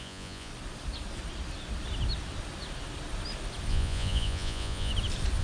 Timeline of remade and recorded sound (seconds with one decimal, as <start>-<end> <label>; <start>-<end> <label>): 0.0-0.5 remade; 0.5-3.7 recorded; 3.7-4.9 remade; 4.9-5.4 recorded